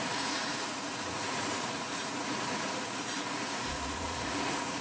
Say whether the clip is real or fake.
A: fake